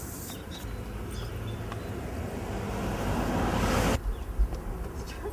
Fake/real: real